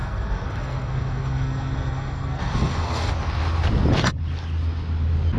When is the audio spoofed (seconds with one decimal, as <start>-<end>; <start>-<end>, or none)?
0.0-3.1